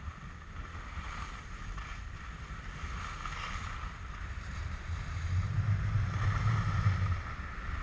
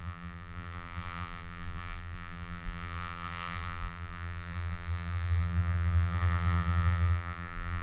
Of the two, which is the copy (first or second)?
second